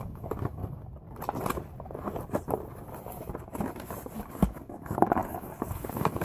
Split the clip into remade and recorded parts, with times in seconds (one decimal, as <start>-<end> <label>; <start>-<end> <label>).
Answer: 0.0-0.6 remade; 0.6-4.3 recorded; 4.3-6.2 remade